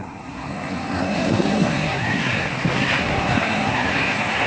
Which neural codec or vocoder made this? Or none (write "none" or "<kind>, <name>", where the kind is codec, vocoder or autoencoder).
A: codec, SNAC